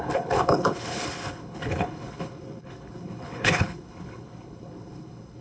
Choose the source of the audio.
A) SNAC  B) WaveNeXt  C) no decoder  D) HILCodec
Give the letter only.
D